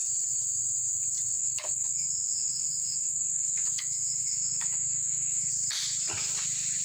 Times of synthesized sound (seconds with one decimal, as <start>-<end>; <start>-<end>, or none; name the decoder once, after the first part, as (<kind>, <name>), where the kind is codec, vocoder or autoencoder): 1.4-5.5 (autoencoder, DAC-VAE)